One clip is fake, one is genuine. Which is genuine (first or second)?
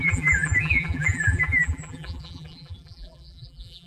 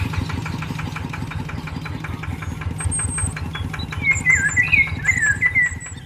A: second